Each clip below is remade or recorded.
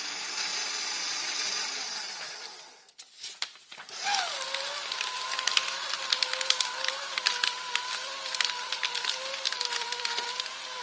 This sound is remade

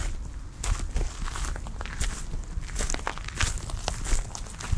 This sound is recorded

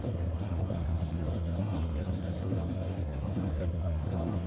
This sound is remade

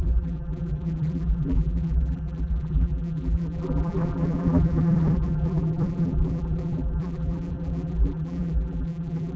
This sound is remade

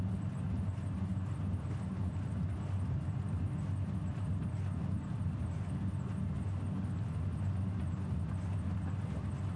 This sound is recorded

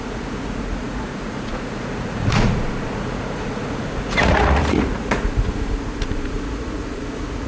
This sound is remade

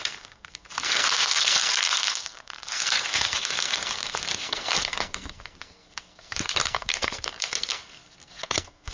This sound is remade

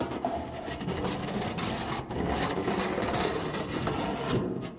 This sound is recorded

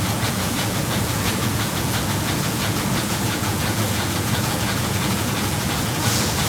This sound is remade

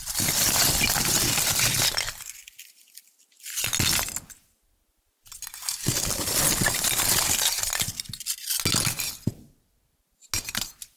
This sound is recorded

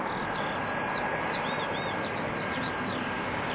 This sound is recorded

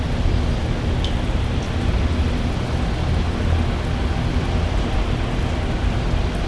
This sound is recorded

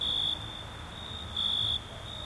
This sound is recorded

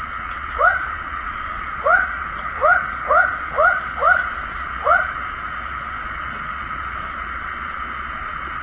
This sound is remade